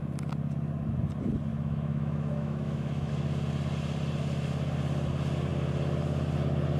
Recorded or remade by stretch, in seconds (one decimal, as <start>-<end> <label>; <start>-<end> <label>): 0.0-1.5 recorded; 1.5-3.1 remade; 3.1-6.8 recorded